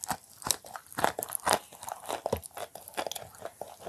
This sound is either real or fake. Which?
real